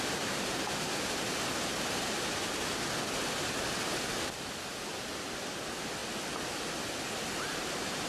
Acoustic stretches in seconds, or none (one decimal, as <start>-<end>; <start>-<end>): 0.0-8.1